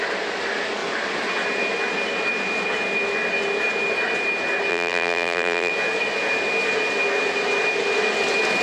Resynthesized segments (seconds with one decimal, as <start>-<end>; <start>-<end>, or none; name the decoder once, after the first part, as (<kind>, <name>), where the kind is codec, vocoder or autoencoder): 4.7-5.7 (vocoder, BigVGAN v2)